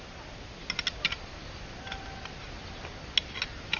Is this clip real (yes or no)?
yes